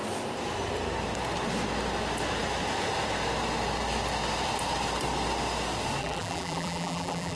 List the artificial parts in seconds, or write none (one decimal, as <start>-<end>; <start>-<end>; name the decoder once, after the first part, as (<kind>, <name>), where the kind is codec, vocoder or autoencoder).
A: 6.0-7.4 (vocoder, BigVGAN v2)